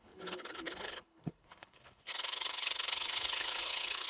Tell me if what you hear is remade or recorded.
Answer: remade